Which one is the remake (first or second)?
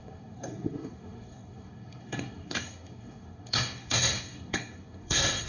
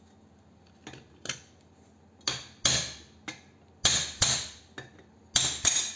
first